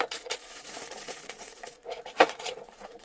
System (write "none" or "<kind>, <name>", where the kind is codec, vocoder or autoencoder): vocoder, Vocos